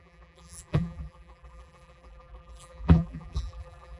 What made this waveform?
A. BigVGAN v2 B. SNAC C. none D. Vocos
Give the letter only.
A